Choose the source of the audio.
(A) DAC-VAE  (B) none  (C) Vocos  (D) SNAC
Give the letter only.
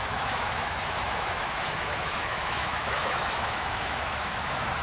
A